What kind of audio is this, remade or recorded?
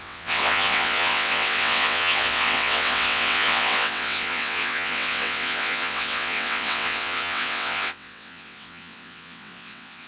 remade